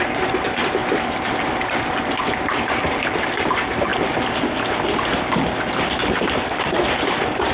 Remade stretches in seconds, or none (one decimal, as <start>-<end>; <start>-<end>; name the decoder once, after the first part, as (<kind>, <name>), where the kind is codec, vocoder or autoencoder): 0.0-0.8 (vocoder, BigVGAN v2); 2.2-3.9; 6.1-7.5